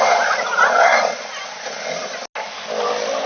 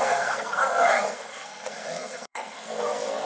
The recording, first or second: first